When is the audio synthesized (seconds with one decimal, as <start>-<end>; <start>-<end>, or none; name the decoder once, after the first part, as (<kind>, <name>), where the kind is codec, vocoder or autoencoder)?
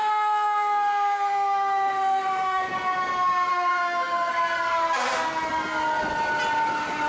0.0-2.6 (autoencoder, DAC-VAE); 3.5-4.3